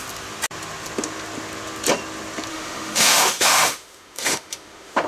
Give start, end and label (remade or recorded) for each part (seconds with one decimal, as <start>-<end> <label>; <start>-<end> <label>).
0.0-2.5 recorded; 2.5-5.1 remade